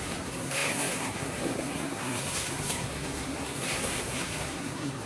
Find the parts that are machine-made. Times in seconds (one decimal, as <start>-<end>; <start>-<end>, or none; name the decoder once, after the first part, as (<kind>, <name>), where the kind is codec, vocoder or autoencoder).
0.0-5.1 (codec, SNAC)